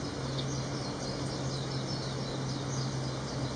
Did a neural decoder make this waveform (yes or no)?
no